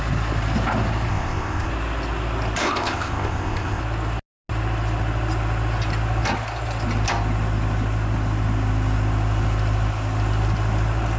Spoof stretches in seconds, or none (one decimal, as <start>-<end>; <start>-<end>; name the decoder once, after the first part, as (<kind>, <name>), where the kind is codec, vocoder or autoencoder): 1.1-1.7 (codec, ZipCodec); 2.6-3.8